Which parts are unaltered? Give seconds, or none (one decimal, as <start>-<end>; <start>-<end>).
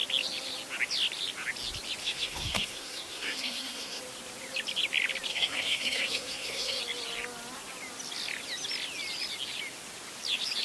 0.0-2.0; 4.0-5.3; 6.8-10.6